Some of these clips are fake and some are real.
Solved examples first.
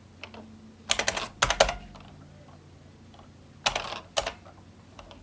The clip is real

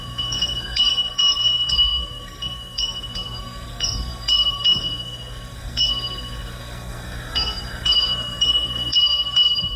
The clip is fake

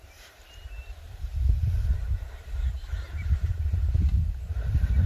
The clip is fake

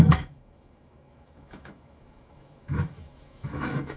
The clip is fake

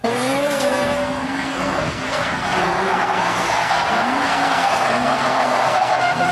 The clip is fake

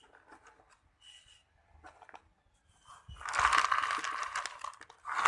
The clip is real